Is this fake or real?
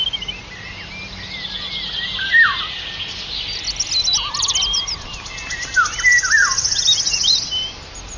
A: real